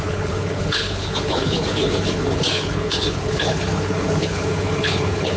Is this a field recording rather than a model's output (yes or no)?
no